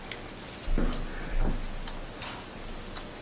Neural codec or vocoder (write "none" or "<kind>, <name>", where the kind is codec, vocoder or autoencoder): none